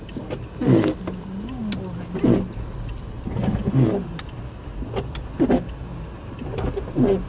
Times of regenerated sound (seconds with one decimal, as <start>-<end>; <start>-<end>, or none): none